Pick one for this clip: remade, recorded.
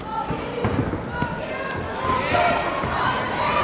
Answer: recorded